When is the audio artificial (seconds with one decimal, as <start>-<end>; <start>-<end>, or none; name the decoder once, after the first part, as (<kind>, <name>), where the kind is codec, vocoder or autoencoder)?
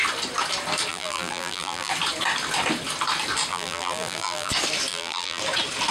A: 0.9-1.9 (vocoder, BigVGAN v2); 3.5-4.5; 4.9-5.4